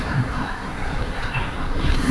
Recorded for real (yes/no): no